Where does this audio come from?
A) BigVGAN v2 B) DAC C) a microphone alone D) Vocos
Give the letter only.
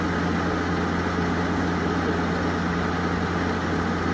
C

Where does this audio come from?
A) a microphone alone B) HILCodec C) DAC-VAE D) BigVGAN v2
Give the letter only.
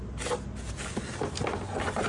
A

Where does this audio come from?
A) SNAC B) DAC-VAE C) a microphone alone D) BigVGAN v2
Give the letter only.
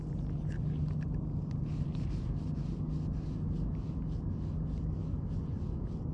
C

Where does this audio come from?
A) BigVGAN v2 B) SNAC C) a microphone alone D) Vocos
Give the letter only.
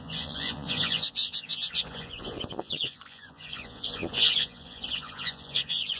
D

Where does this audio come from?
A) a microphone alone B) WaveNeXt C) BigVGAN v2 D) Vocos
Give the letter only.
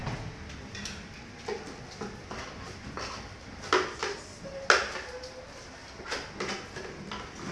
A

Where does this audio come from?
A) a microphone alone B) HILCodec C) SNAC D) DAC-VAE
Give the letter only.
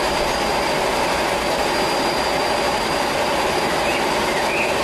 A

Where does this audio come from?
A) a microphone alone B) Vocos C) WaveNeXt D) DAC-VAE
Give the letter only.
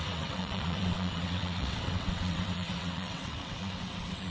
C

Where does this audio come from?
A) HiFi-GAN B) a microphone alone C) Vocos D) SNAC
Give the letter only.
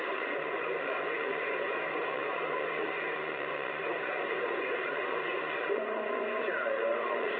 C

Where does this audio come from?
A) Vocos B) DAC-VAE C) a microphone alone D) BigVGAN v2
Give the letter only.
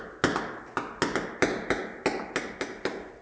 C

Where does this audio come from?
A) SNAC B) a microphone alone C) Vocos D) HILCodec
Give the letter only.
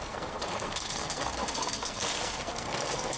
A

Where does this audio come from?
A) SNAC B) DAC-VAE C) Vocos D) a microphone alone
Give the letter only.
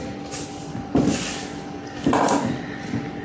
D